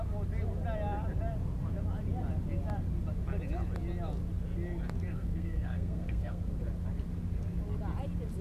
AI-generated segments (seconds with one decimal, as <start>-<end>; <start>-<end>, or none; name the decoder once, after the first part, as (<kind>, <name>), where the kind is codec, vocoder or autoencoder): 5.1-6.6 (codec, SNAC)